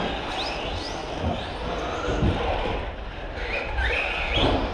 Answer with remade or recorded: recorded